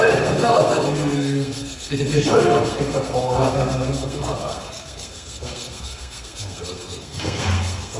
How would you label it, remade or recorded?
remade